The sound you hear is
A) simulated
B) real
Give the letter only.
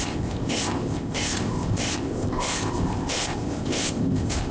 A